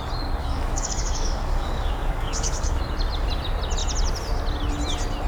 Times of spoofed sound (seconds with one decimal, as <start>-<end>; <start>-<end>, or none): 0.4-2.8